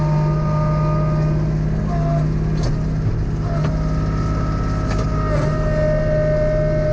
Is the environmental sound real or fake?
real